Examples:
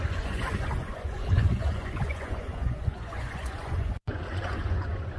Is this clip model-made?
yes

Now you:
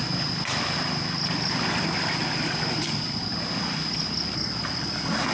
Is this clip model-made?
no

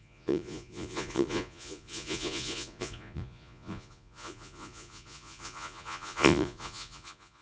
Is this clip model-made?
yes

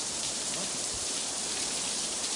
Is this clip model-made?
yes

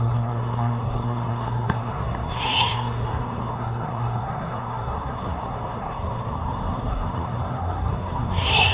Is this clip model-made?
yes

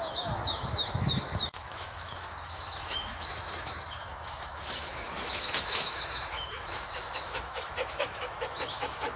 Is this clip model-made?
yes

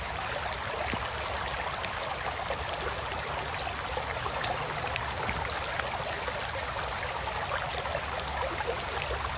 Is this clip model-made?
no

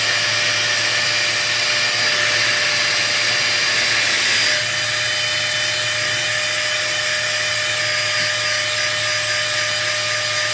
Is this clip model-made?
no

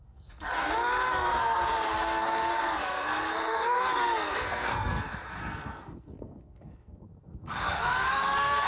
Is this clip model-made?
yes